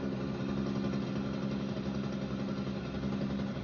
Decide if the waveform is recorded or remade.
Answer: recorded